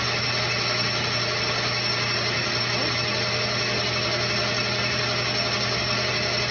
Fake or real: real